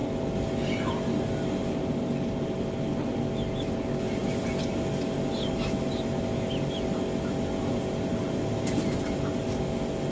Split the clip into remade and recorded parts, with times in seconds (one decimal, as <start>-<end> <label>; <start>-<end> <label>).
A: 0.0-10.1 recorded